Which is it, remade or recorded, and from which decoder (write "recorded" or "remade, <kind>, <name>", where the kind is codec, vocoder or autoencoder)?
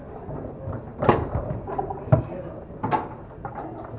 recorded